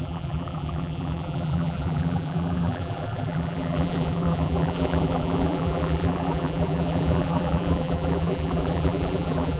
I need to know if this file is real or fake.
fake